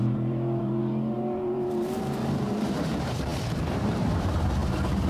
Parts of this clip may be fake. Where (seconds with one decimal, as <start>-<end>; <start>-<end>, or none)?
0.0-5.1